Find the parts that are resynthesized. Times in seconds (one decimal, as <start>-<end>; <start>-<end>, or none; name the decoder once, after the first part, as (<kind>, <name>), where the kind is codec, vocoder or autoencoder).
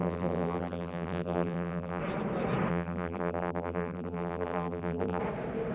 0.0-2.0 (vocoder, BigVGAN v2); 2.7-5.2